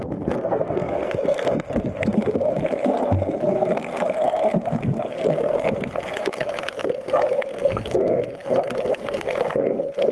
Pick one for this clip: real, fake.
fake